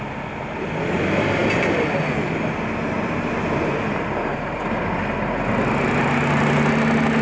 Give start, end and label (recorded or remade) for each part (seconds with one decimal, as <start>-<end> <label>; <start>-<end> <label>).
0.0-7.2 recorded